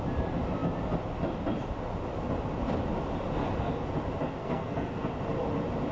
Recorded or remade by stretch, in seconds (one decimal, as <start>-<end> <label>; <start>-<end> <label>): 0.0-4.4 recorded; 4.4-5.1 remade; 5.1-5.9 recorded